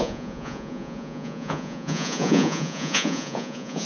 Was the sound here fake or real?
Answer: fake